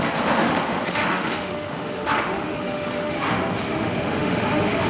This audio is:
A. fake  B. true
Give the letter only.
A